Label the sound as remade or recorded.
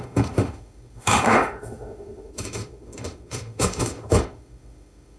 remade